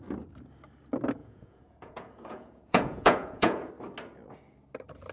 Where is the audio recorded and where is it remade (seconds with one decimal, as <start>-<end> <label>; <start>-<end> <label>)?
0.0-1.2 recorded; 1.2-3.7 remade; 3.7-5.1 recorded